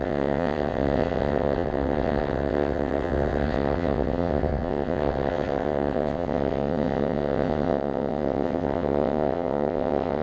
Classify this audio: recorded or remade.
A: remade